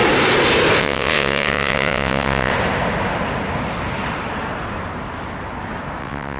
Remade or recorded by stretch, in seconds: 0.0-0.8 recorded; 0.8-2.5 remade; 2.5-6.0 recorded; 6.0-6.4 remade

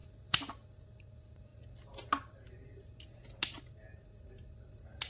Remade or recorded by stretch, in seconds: 0.0-5.1 recorded